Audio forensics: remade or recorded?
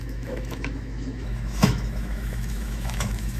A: remade